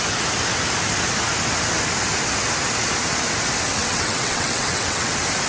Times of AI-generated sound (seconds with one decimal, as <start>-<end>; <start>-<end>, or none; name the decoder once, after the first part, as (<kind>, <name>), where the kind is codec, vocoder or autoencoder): 3.8-5.1 (vocoder, WaveNeXt)